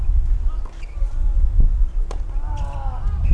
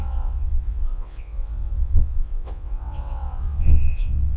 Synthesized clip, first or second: second